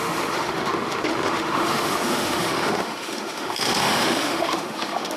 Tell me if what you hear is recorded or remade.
remade